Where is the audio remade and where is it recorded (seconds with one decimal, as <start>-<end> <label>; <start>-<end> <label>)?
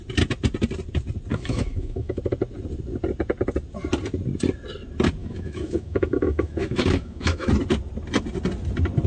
0.0-1.3 recorded; 1.3-2.2 remade; 2.2-5.2 recorded; 5.2-7.5 remade; 7.5-9.1 recorded